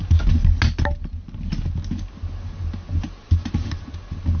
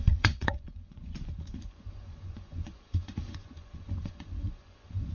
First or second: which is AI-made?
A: second